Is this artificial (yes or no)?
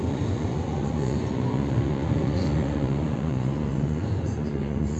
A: yes